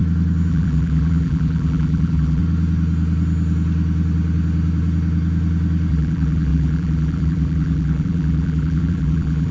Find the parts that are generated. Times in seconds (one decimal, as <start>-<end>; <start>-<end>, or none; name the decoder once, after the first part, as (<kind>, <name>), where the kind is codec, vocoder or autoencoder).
0.5-2.4 (vocoder, BigVGAN v2); 5.9-9.5